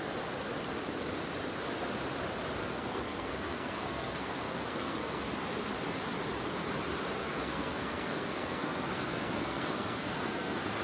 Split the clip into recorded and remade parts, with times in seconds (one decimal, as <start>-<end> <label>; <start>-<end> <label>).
0.0-2.6 recorded; 2.6-5.2 remade; 5.2-7.2 recorded; 7.2-10.8 remade

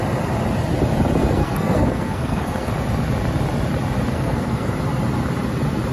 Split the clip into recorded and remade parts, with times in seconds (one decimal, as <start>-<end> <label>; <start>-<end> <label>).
0.0-1.2 recorded; 1.2-2.7 remade; 2.7-4.1 recorded; 4.1-4.7 remade; 4.7-5.9 recorded

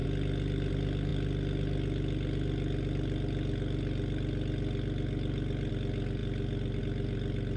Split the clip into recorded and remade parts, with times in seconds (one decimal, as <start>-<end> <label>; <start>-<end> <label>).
0.0-7.6 recorded